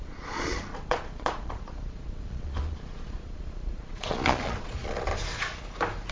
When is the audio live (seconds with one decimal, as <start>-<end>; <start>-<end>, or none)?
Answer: 5.1-6.1